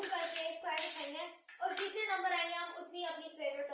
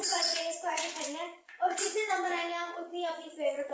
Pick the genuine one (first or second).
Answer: first